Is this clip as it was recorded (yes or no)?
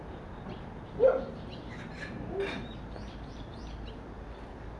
yes